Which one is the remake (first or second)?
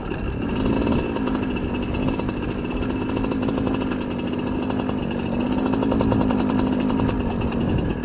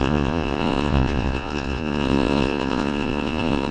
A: second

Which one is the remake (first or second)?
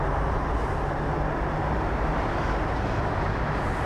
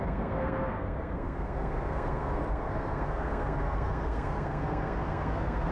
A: second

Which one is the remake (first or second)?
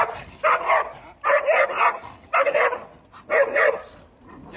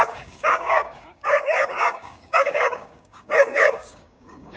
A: second